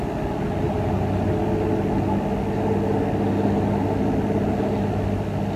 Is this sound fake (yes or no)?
no